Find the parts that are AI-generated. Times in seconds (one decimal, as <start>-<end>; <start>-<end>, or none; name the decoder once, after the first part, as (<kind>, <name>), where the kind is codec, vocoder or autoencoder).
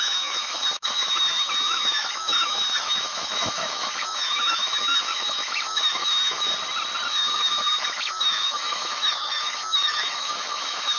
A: 0.0-6.5 (autoencoder, DAC-VAE); 7.1-11.0